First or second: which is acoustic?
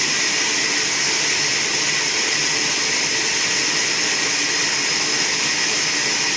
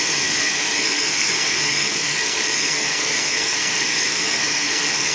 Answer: first